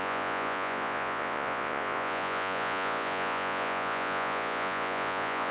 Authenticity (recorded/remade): remade